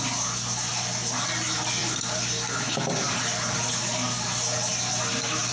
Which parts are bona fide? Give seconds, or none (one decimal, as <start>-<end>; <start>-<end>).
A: 0.0-5.5